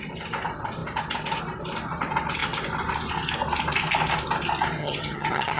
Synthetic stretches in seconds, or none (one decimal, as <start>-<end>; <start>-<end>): 4.8-5.6